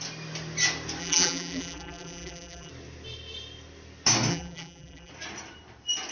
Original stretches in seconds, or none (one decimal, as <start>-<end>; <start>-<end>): 0.0-1.0; 2.7-4.3; 5.1-6.1